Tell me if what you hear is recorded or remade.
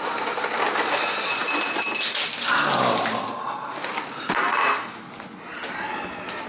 recorded